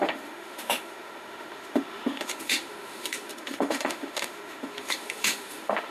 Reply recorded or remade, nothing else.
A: remade